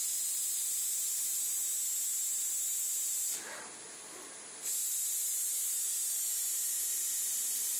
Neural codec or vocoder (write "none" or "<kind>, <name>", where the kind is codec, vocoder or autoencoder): none